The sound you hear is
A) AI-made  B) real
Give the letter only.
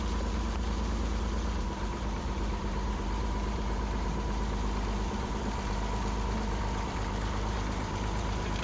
A